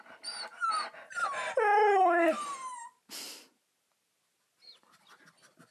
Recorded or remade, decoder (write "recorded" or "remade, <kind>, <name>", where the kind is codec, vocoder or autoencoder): recorded